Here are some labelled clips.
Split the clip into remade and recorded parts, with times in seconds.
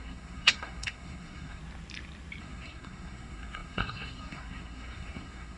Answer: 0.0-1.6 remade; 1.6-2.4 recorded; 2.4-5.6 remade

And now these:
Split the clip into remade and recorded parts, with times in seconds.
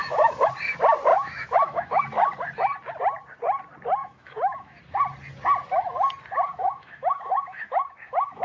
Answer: 0.0-0.5 remade; 0.5-1.1 recorded; 1.1-2.0 remade; 2.0-4.0 recorded; 4.0-4.8 remade; 4.8-6.5 recorded; 6.5-8.4 remade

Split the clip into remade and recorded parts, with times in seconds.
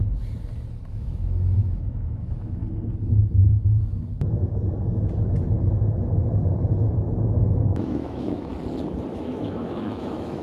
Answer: 0.0-0.9 recorded; 0.9-2.6 remade; 2.6-7.4 recorded; 7.4-8.5 remade; 8.5-9.1 recorded; 9.1-10.4 remade